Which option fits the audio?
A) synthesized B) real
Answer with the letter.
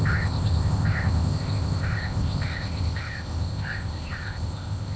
A